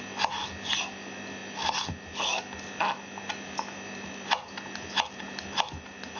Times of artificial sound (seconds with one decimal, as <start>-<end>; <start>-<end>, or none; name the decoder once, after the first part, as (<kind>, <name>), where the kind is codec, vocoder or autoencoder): none